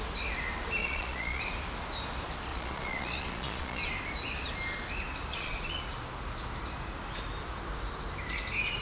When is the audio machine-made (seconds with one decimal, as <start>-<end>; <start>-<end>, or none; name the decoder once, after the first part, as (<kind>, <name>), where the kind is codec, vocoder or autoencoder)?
0.8-1.4 (vocoder, Vocos); 2.5-3.8; 5.3-5.8